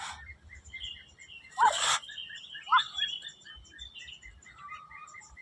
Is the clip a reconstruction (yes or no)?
no